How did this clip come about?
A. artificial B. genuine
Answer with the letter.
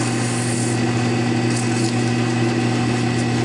B